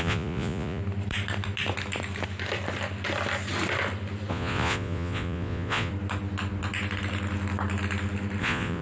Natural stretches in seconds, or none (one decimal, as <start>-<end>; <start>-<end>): 0.8-4.3; 5.9-8.4